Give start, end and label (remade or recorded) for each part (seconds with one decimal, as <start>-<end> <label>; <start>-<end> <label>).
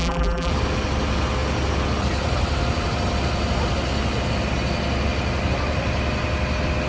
0.0-0.5 remade; 0.5-6.9 recorded